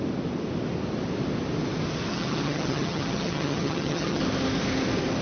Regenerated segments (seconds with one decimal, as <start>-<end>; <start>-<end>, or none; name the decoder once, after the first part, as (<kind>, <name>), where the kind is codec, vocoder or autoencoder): 2.1-4.2 (vocoder, HiFi-GAN)